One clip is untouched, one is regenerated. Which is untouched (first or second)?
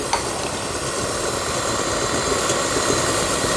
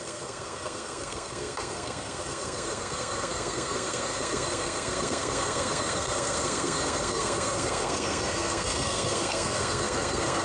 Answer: first